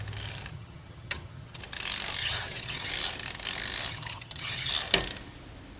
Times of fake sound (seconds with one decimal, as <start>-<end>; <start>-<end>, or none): 0.5-1.6; 2.2-2.9; 3.9-4.7